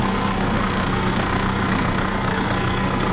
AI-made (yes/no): yes